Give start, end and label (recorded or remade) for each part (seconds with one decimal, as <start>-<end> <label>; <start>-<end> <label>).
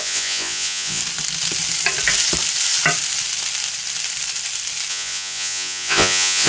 0.0-1.0 remade; 1.0-4.9 recorded; 4.9-6.5 remade